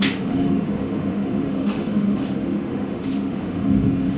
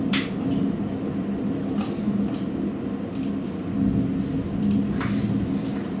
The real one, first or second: second